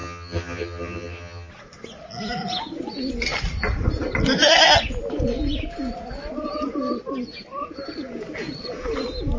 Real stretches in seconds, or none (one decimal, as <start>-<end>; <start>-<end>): 1.5-9.4